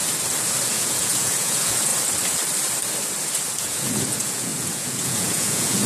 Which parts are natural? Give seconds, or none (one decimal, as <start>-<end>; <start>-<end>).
0.0-0.7; 1.9-3.6